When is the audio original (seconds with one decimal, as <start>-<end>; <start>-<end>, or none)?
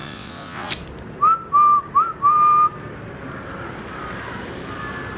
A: 0.7-5.2